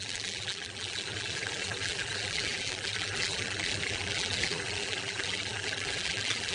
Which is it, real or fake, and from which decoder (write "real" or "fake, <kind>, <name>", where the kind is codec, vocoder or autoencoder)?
fake, vocoder, BigVGAN v2